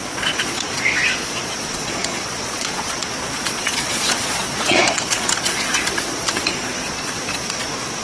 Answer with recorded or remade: remade